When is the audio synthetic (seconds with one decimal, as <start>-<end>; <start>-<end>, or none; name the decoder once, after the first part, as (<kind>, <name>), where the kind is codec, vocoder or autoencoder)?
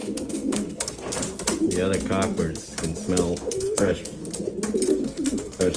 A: 0.0-0.9 (codec, SNAC); 3.5-4.2; 4.9-5.8